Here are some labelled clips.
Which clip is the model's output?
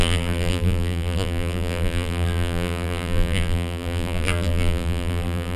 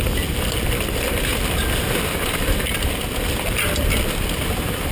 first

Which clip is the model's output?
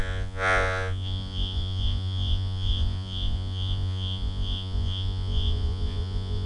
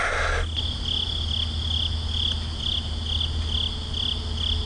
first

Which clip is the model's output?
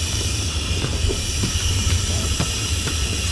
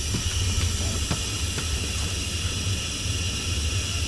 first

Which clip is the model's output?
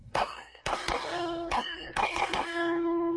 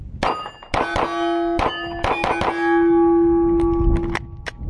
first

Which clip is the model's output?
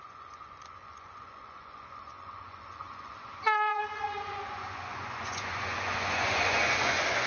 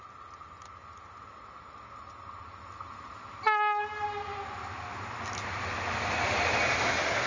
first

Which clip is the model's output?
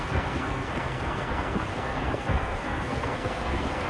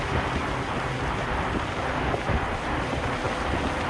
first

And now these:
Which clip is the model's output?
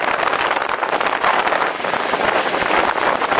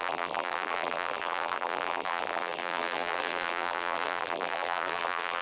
second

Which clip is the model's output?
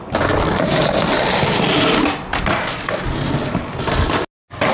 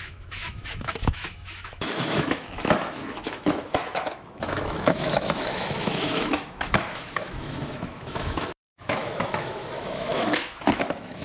second